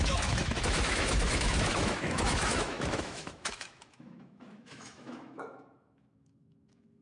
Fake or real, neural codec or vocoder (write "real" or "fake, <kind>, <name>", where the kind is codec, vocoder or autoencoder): fake, autoencoder, DAC-VAE